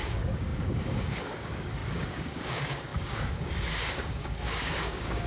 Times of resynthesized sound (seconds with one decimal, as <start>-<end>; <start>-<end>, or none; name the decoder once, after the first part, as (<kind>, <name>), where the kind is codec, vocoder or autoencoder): 0.0-5.3 (codec, DAC)